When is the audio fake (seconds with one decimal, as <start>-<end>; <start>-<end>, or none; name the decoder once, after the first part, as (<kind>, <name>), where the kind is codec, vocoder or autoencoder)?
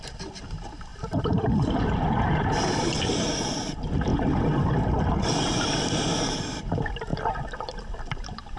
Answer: 0.0-4.1 (vocoder, BigVGAN v2); 6.4-7.1; 7.6-8.6